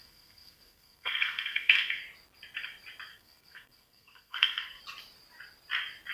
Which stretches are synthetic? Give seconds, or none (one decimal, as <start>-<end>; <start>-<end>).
0.0-2.0; 3.1-4.8

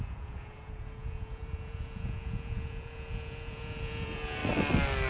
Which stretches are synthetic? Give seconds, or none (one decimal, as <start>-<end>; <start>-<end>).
0.0-4.4

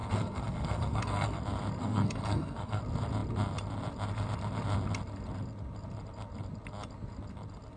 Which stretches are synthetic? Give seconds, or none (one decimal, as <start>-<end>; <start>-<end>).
0.0-1.4; 1.8-2.8

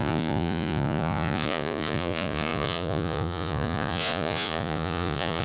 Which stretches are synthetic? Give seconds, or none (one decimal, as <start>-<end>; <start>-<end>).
0.0-5.4

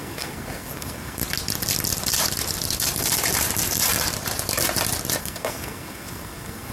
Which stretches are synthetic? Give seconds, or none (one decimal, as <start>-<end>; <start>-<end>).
0.0-1.2; 5.2-6.7

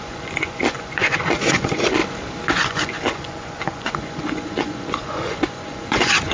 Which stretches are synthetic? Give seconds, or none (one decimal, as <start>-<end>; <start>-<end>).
0.0-2.0; 2.5-6.3